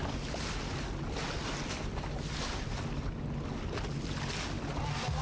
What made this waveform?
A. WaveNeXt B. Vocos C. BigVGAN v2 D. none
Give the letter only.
D